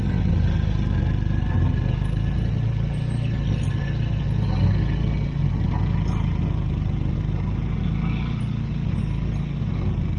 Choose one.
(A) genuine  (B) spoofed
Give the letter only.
A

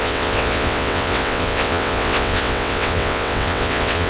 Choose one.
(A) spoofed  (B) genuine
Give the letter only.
A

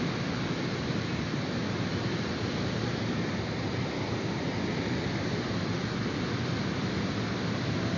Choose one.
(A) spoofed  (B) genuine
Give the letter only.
B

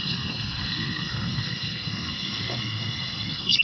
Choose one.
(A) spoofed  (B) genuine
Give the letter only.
A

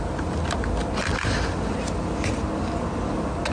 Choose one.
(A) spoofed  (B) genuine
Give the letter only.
B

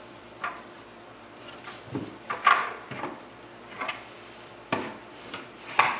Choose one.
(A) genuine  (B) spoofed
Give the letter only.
B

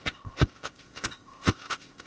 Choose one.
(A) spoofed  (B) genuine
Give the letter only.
A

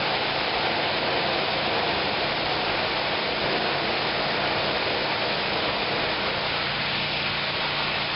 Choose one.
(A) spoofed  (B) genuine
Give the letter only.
B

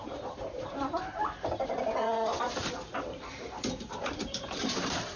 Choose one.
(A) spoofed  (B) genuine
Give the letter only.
A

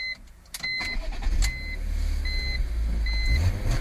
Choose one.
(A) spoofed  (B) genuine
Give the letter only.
B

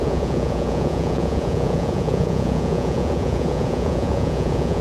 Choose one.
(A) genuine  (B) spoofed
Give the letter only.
B